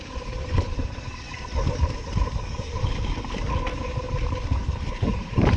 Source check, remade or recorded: remade